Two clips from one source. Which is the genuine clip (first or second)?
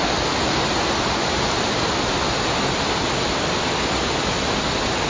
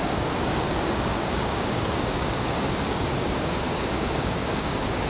first